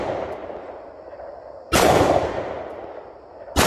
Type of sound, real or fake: real